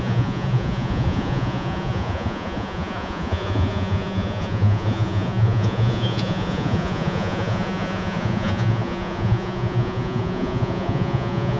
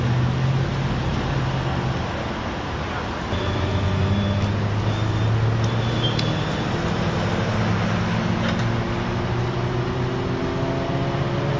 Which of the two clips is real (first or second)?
second